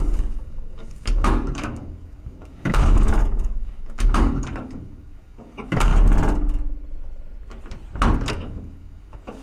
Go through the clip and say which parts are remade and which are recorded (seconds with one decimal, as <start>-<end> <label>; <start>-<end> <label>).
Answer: 0.0-5.9 remade; 5.9-8.3 recorded; 8.3-9.4 remade